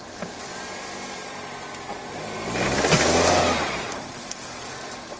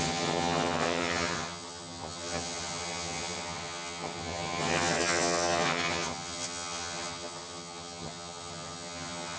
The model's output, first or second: second